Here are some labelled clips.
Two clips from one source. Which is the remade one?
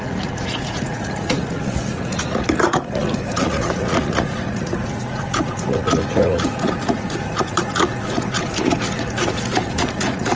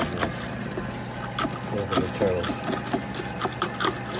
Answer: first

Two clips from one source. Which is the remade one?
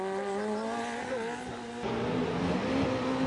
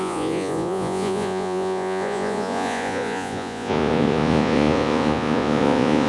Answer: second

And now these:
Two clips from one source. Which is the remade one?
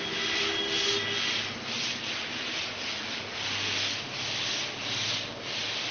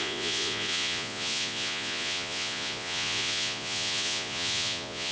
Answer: second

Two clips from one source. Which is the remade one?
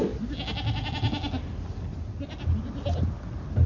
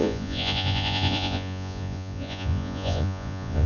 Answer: second